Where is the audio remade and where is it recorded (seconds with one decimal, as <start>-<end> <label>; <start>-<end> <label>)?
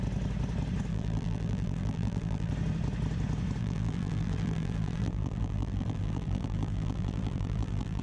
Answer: 0.0-0.9 recorded; 0.9-2.5 remade; 2.5-3.6 recorded; 3.6-8.0 remade